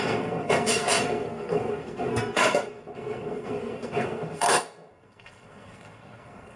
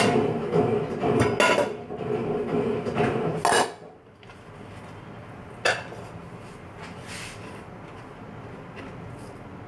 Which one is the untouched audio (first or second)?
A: second